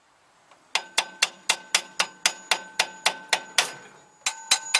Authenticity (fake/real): real